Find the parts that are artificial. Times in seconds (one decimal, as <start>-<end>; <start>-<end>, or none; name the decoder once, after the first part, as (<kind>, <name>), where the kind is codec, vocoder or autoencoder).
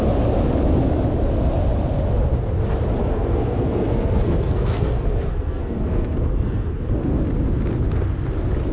3.0-6.7 (codec, SNAC)